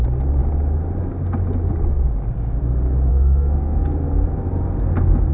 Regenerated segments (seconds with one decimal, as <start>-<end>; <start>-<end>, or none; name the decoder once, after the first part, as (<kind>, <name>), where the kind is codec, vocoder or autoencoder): 3.1-3.8 (codec, SNAC)